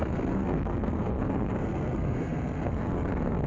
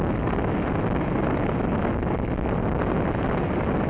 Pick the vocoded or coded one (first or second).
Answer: first